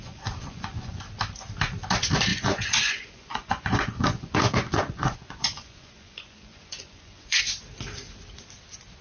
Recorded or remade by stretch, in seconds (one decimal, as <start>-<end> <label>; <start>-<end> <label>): 0.0-1.0 remade; 1.0-2.3 recorded; 2.3-7.4 remade; 7.4-9.0 recorded